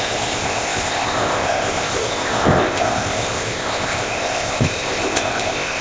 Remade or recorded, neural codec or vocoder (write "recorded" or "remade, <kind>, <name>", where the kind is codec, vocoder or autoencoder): remade, codec, ZipCodec